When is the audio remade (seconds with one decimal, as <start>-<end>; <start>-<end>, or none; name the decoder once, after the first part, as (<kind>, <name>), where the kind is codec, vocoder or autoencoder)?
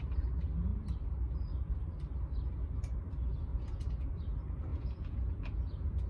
3.5-4.1 (vocoder, Vocos); 4.7-6.1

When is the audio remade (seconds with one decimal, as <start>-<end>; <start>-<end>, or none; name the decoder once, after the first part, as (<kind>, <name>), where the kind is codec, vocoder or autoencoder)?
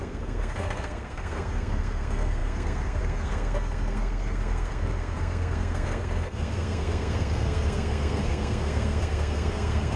0.0-10.0 (codec, SNAC)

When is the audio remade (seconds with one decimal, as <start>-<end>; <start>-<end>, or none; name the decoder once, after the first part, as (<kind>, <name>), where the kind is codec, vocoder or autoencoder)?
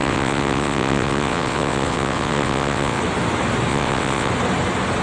0.0-3.0 (vocoder, WaveNeXt); 3.7-4.3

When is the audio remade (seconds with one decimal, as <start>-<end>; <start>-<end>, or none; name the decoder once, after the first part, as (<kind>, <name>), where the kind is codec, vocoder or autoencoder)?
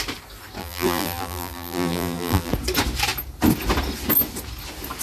0.6-2.5 (vocoder, BigVGAN v2)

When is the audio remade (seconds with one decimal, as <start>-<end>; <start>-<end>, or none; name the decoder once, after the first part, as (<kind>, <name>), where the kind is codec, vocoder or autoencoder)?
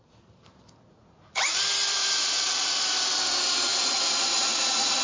0.9-1.5 (vocoder, Vocos); 2.0-2.7; 3.7-5.0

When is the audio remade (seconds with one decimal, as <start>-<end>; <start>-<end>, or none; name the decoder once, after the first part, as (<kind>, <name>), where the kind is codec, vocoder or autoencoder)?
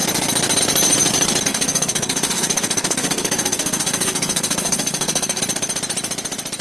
1.5-5.4 (codec, SNAC)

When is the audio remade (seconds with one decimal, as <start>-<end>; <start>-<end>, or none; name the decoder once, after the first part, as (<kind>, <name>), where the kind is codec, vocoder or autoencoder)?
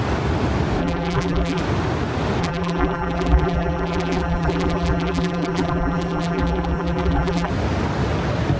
0.8-1.6 (vocoder, BigVGAN v2); 2.4-7.5